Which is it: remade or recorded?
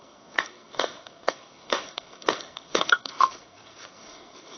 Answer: remade